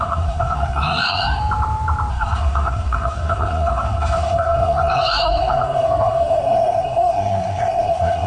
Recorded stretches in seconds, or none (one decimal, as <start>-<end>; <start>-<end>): 1.4-2.1